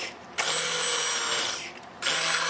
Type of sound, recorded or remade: recorded